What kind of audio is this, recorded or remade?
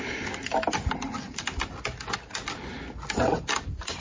recorded